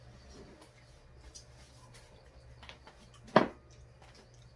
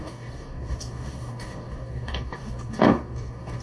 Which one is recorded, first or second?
first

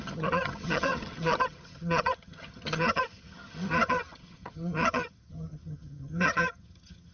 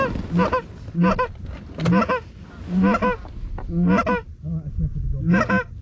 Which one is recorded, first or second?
second